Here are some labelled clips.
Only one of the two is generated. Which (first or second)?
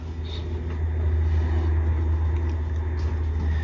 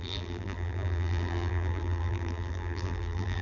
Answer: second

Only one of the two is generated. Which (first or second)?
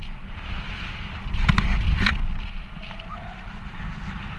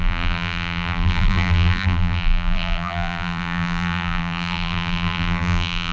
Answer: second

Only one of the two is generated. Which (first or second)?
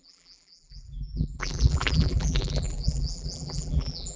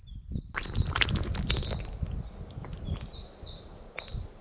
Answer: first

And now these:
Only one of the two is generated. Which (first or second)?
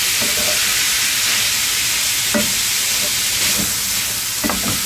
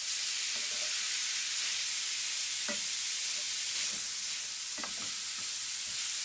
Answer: second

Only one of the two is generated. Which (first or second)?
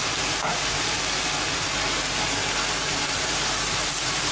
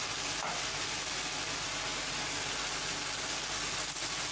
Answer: first